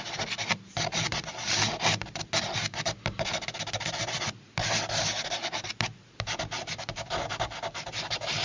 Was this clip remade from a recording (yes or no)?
no